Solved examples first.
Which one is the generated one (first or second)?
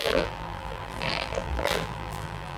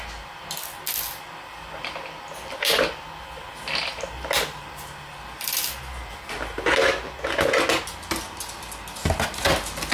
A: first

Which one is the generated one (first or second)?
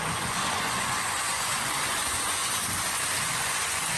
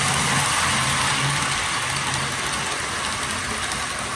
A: first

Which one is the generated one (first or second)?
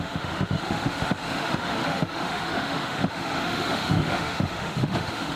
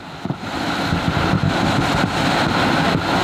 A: first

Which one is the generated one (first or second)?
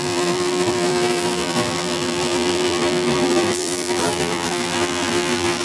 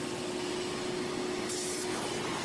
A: first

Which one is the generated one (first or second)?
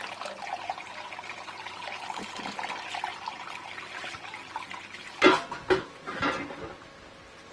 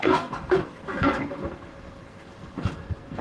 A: second